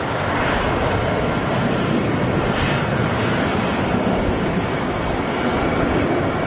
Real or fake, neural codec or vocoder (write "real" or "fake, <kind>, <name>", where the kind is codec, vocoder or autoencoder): real